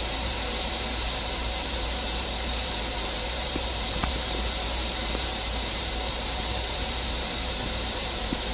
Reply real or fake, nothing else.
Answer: fake